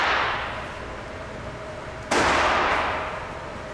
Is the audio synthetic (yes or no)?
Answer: no